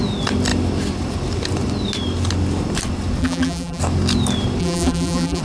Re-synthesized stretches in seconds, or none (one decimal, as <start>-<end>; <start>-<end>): 3.2-3.8; 4.6-5.4